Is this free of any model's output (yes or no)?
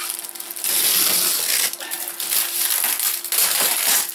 yes